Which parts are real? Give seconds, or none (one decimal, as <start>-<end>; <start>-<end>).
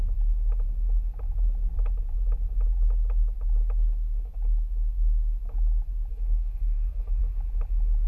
0.0-6.1; 7.2-8.1